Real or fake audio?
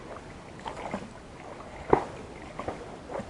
real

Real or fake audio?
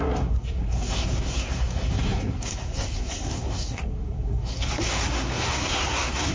fake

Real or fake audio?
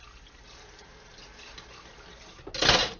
real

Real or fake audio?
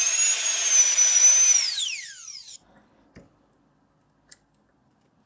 real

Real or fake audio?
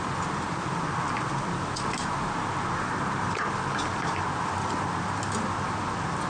real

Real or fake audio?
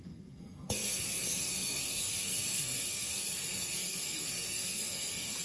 fake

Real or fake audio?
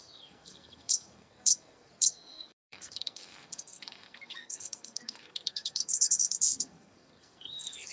fake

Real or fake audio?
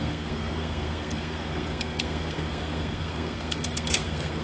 fake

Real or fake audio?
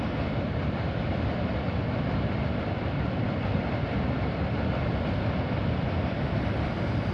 real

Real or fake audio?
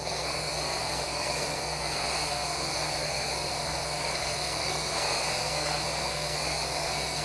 fake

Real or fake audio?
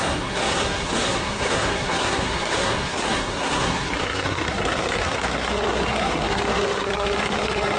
fake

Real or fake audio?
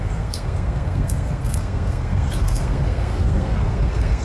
fake